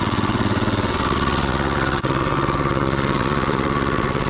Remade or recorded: remade